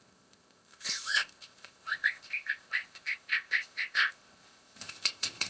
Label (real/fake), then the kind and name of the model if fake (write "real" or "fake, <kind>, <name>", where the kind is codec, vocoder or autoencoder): fake, codec, ZipCodec